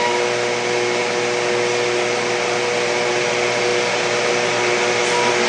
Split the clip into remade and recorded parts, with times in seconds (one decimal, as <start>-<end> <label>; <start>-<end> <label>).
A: 0.0-5.5 recorded